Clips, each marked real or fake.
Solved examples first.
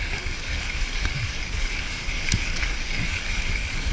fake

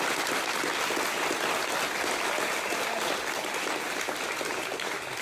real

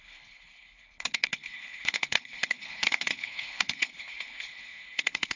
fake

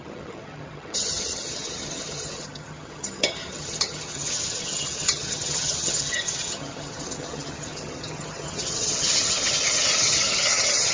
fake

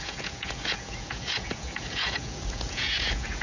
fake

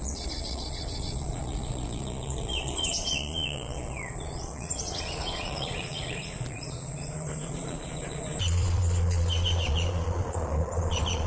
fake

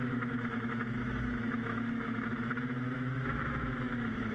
fake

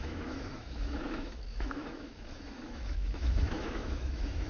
fake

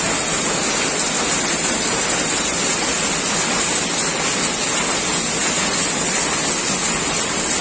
real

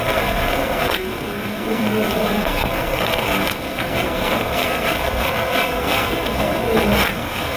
fake